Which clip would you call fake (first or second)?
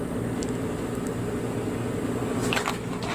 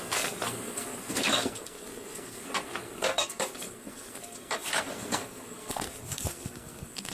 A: second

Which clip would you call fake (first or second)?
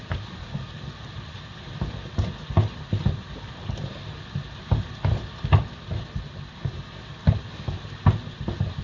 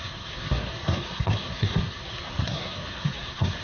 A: second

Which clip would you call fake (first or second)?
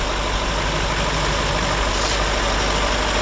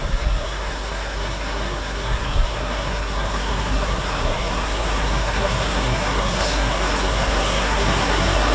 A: second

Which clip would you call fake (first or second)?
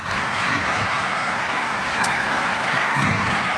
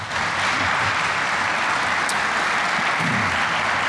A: first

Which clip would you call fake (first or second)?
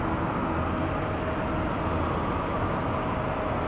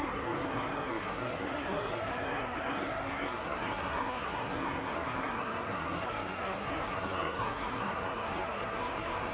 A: second